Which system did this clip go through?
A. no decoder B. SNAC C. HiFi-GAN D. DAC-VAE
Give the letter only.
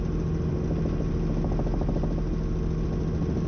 A